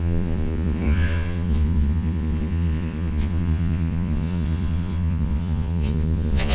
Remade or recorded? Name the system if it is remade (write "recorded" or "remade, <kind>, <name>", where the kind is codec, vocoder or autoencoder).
remade, vocoder, Vocos